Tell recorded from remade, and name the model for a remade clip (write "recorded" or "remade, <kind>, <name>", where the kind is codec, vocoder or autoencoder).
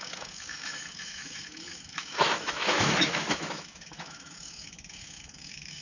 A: remade, autoencoder, DAC-VAE